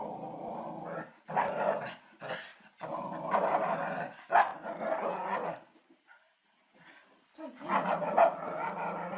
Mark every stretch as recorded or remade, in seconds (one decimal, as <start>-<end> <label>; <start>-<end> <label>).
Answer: 0.0-9.2 recorded